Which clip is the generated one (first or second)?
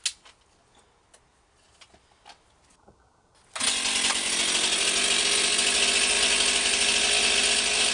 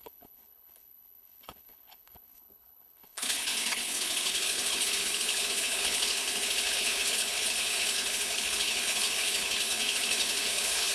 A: second